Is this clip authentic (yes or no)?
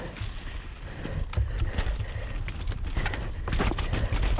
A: yes